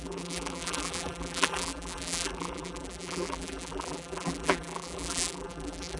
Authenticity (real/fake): fake